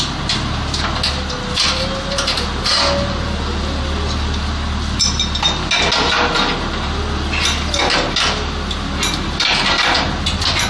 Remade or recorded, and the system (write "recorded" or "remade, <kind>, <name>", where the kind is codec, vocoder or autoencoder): recorded